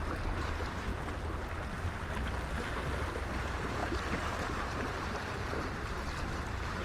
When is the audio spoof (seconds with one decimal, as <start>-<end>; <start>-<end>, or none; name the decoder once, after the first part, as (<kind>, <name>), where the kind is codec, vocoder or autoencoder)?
0.0-0.9 (vocoder, BigVGAN v2); 2.5-6.8